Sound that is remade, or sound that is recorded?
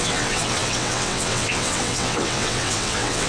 remade